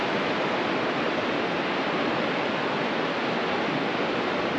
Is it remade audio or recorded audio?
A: recorded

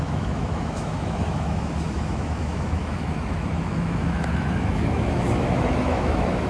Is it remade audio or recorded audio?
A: remade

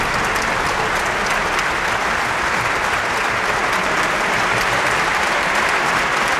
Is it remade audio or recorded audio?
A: recorded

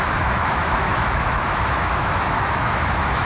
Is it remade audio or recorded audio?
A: remade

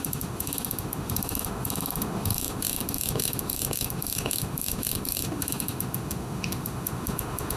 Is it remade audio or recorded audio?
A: remade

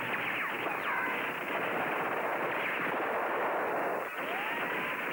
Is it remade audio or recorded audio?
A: recorded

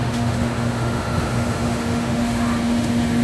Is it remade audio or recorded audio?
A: remade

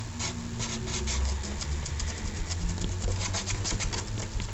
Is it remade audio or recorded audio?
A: recorded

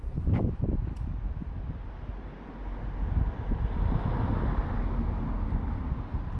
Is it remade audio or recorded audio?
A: recorded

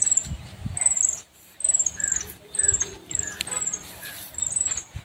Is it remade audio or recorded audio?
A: recorded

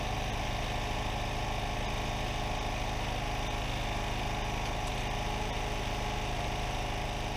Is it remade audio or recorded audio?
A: recorded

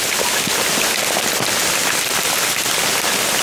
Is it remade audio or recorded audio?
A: recorded